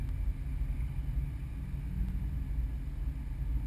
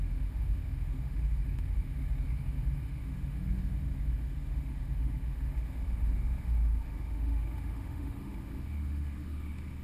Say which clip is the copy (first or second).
second